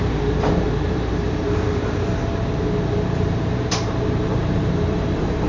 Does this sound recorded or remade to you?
remade